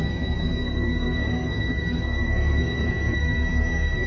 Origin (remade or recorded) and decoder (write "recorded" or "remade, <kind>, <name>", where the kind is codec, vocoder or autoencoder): remade, codec, SNAC